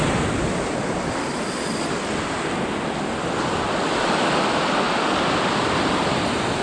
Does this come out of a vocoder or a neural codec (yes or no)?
no